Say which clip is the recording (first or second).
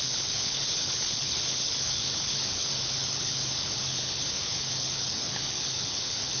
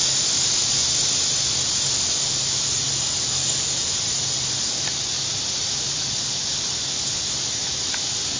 second